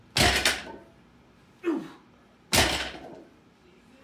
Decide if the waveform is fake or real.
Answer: real